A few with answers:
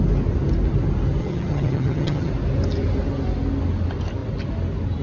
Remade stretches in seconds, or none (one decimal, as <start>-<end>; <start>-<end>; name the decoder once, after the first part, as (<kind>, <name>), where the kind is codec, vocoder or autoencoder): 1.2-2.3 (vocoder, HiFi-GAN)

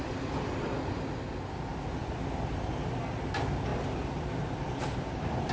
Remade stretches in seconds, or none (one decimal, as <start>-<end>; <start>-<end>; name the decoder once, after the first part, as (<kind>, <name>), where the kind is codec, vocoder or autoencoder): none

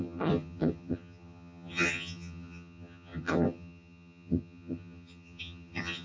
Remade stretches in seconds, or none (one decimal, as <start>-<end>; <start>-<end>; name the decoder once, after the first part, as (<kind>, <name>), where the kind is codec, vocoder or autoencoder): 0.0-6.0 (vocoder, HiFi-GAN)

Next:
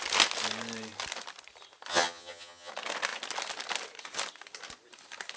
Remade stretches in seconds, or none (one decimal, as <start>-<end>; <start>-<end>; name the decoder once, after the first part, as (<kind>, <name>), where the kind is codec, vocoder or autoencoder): 1.9-2.7 (vocoder, HiFi-GAN)

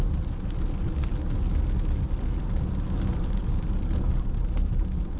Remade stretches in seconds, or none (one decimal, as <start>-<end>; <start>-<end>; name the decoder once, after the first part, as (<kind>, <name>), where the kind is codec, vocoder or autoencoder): none

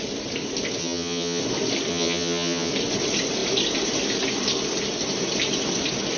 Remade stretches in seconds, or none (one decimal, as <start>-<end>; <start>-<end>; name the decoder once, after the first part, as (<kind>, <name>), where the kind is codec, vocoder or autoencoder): 0.8-1.4 (vocoder, HiFi-GAN); 1.9-2.7

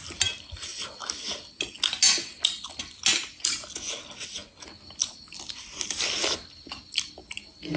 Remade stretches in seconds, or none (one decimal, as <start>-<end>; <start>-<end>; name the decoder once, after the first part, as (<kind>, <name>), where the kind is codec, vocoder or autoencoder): none